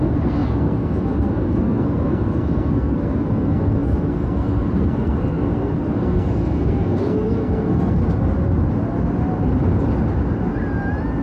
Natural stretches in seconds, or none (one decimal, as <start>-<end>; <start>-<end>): 8.0-11.2